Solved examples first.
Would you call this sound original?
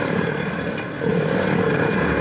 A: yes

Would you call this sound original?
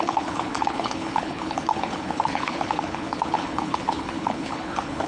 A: no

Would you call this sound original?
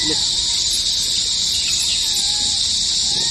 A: yes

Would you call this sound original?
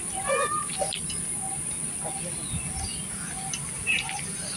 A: yes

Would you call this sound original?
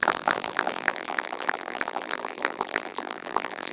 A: no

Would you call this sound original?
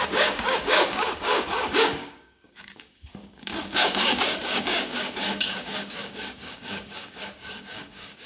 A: no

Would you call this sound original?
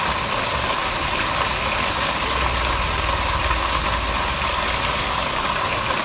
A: yes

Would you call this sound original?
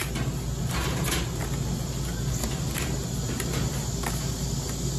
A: yes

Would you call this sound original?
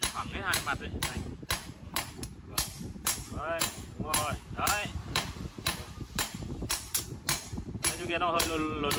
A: no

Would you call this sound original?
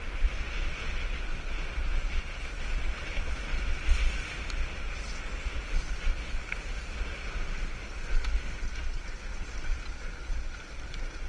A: yes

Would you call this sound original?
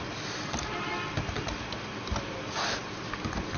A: yes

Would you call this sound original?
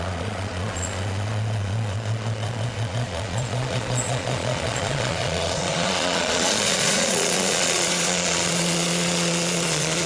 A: no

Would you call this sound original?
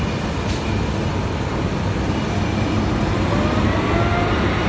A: yes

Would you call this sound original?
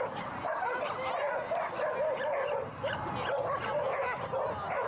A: yes